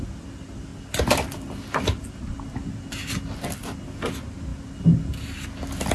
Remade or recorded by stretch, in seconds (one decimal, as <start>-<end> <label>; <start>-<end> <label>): 0.0-5.9 recorded